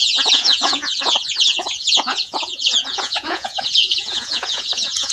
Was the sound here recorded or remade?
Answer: remade